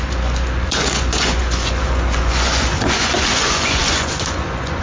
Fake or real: fake